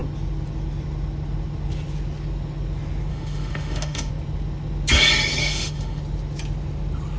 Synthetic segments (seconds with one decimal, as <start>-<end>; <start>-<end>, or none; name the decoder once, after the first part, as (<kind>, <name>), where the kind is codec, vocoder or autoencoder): 3.1-4.1 (autoencoder, DAC-VAE); 5.4-6.0